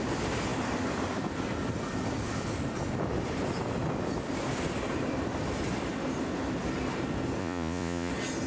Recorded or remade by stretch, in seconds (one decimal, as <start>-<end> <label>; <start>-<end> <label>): 0.0-7.4 recorded; 7.4-8.1 remade; 8.1-8.5 recorded